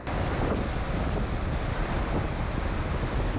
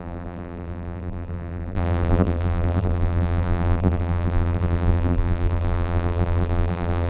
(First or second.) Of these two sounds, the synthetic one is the second